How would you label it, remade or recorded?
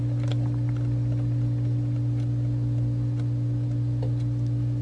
recorded